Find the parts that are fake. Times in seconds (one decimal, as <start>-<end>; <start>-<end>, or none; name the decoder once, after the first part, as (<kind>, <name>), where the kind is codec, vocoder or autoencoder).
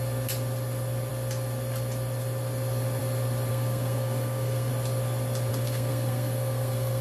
3.5-4.7 (codec, SNAC); 5.5-7.0